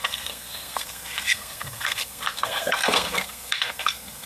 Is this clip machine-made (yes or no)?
yes